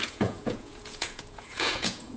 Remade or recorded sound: remade